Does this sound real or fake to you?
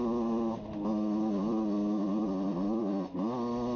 real